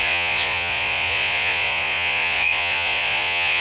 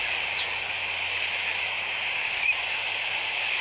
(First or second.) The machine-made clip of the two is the first